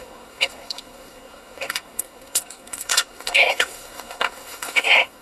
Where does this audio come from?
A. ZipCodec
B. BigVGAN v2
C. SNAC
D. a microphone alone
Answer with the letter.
C